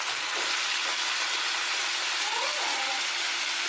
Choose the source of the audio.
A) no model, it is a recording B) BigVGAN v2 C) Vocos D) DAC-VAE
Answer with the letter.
A